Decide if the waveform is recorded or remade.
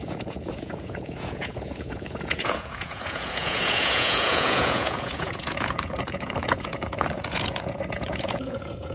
remade